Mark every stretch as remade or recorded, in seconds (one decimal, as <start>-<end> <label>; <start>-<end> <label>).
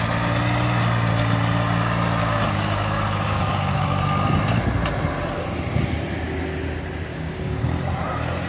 0.0-2.2 recorded; 2.2-4.0 remade; 4.0-7.1 recorded; 7.1-7.6 remade; 7.6-8.5 recorded